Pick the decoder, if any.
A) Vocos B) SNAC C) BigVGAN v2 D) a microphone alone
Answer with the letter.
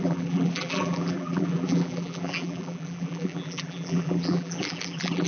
C